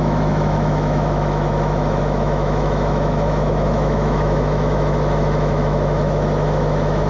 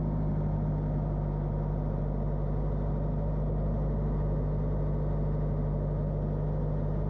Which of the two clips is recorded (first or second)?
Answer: second